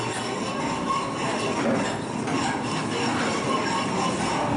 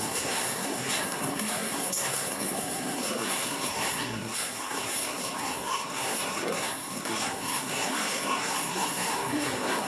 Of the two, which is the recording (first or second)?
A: first